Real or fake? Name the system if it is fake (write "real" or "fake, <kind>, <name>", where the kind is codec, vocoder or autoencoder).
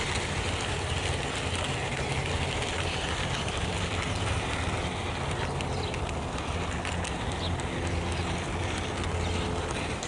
real